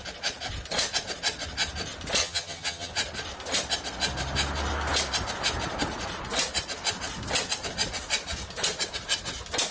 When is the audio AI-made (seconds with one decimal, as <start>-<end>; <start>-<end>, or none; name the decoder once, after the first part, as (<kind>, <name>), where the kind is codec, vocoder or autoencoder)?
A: 2.2-2.9 (vocoder, HiFi-GAN)